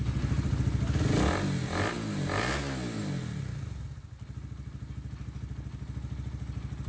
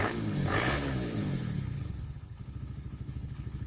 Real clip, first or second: first